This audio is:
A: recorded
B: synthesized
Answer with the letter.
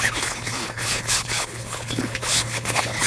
B